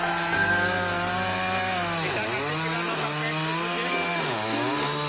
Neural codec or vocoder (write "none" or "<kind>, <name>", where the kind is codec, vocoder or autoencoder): none